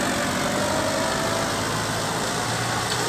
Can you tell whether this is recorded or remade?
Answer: recorded